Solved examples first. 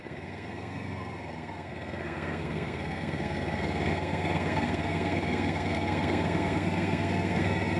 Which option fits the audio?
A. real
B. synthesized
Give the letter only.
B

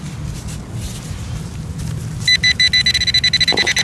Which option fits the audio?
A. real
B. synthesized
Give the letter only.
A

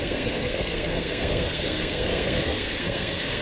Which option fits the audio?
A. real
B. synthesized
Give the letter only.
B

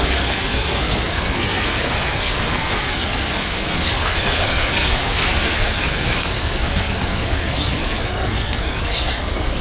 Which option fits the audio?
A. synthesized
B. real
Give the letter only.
A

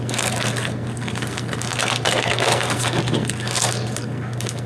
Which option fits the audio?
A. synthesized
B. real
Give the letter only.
A